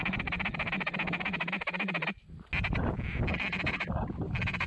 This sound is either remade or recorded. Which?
recorded